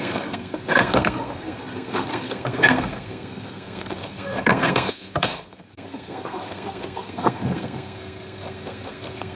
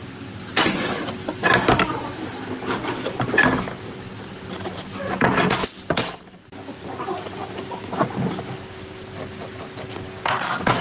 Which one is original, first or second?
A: second